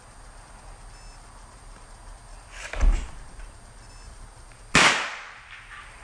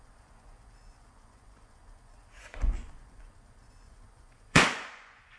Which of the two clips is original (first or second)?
first